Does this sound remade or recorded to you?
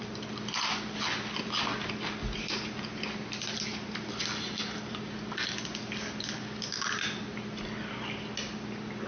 recorded